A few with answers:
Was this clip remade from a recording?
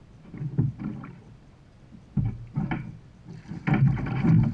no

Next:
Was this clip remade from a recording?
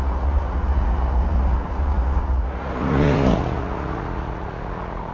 yes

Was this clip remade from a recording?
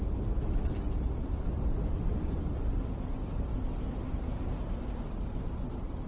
no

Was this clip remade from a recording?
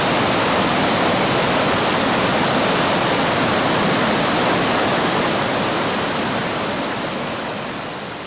no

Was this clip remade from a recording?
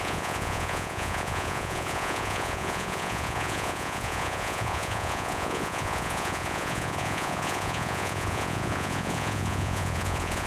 yes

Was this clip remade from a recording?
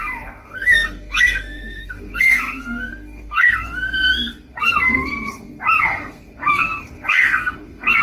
yes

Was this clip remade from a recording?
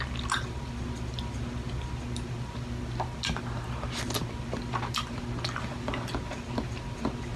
no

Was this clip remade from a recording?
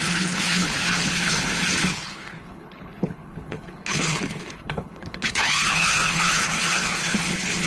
yes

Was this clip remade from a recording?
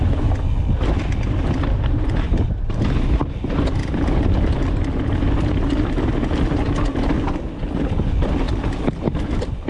no